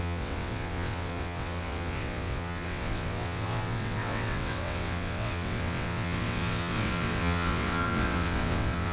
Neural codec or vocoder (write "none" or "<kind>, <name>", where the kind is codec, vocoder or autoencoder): vocoder, WaveNeXt